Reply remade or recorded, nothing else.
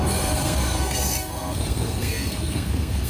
remade